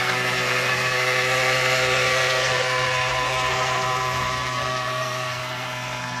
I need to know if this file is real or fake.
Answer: fake